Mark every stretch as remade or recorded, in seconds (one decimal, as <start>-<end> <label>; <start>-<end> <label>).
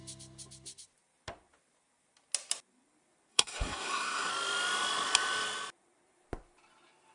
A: 0.0-3.3 recorded; 3.3-4.3 remade; 4.3-7.1 recorded